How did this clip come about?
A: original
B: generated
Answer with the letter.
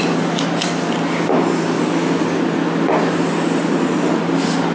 A